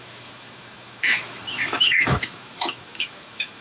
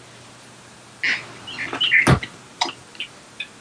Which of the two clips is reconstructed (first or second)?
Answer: first